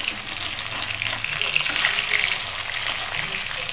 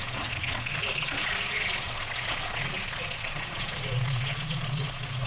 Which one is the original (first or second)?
first